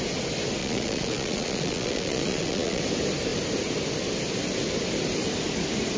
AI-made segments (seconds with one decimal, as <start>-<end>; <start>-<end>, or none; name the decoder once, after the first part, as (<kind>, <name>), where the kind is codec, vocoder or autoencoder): 0.6-2.8 (vocoder, Vocos)